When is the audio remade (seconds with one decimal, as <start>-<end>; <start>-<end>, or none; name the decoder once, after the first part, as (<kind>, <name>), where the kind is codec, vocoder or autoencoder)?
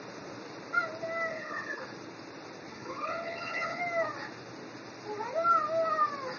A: 1.3-1.8 (codec, HILCodec); 2.7-3.8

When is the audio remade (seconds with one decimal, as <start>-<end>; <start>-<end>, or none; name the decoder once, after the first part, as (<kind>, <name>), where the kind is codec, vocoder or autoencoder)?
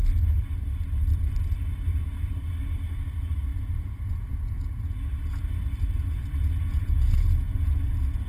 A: 3.5-5.4 (vocoder, Vocos); 6.6-7.9